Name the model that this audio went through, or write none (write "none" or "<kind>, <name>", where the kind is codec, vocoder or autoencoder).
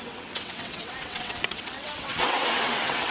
vocoder, WaveNeXt